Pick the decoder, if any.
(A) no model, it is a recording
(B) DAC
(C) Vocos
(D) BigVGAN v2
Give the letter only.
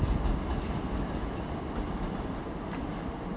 A